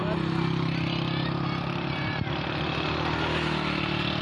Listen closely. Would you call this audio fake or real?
real